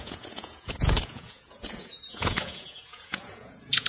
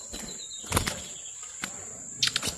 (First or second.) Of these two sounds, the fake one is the first